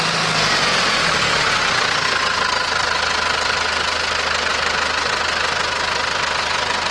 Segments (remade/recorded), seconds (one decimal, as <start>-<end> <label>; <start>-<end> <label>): 0.0-6.9 recorded